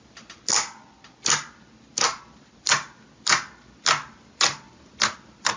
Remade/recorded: recorded